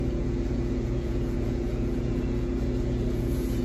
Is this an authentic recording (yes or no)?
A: no